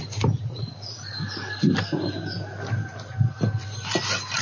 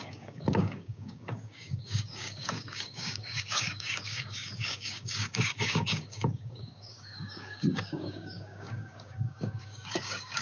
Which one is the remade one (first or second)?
second